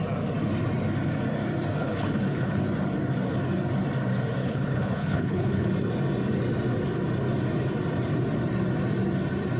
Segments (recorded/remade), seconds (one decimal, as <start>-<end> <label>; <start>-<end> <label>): 0.0-1.8 recorded; 1.8-2.6 remade; 2.6-4.4 recorded; 4.4-5.7 remade; 5.7-9.6 recorded